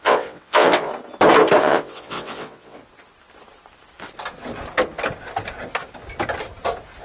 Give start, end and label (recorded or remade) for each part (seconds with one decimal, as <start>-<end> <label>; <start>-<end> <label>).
0.0-0.9 remade; 0.9-1.6 recorded; 1.6-2.8 remade; 2.8-7.0 recorded